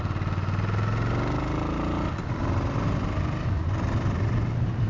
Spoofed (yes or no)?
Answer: no